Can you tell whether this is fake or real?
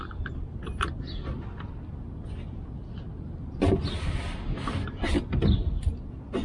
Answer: real